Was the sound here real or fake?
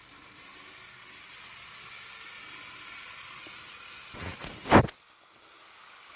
real